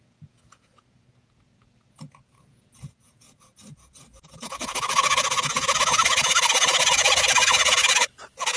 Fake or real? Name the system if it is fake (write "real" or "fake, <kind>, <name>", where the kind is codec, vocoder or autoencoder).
fake, vocoder, Vocos